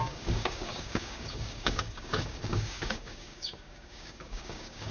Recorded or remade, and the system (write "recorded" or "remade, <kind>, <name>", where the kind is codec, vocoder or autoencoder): remade, codec, DAC